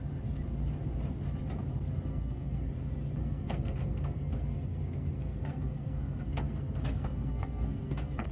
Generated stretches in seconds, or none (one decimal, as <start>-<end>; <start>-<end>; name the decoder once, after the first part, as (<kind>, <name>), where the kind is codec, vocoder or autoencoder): 2.1-2.7 (codec, SNAC); 3.2-8.3